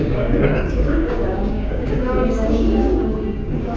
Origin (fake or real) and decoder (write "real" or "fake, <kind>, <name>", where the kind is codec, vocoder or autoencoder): fake, codec, DAC